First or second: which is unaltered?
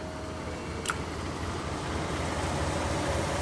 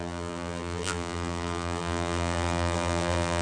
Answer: first